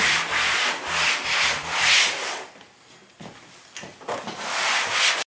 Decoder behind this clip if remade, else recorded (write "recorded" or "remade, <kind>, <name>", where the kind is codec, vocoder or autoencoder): recorded